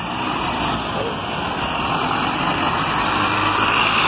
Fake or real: fake